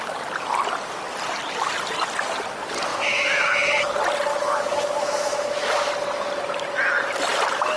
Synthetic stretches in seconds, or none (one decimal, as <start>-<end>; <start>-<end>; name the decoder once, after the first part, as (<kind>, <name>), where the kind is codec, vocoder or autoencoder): 2.9-3.9 (autoencoder, DAC-VAE); 4.3-5.9